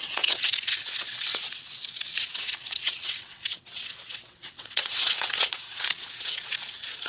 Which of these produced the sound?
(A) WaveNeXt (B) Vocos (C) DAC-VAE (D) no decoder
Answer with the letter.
A